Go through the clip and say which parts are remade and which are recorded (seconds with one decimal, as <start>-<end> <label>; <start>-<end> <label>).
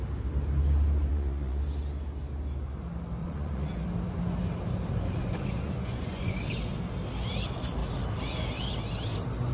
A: 0.0-1.1 recorded; 1.1-1.6 remade; 1.6-3.2 recorded; 3.2-3.8 remade; 3.8-5.2 recorded; 5.2-6.3 remade; 6.3-9.5 recorded